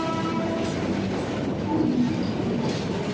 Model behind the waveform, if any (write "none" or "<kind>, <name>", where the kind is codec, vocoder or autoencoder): none